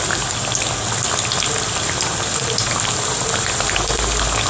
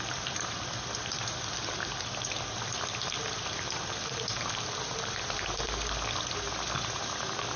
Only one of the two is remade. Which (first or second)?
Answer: second